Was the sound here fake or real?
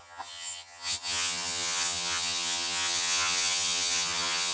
fake